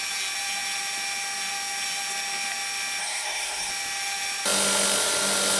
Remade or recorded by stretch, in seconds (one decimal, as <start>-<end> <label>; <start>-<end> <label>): 0.0-3.0 recorded; 3.0-3.7 remade; 3.7-5.6 recorded